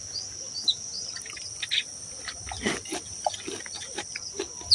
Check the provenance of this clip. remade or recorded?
recorded